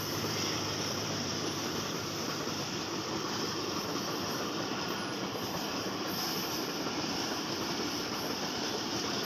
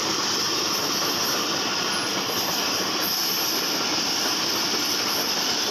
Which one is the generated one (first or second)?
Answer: first